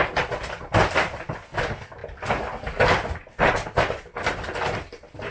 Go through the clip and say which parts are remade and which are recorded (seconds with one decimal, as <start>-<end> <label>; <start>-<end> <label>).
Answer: 0.0-5.3 recorded